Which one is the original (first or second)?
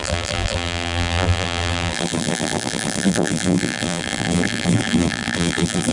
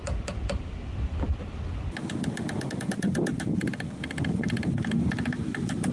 second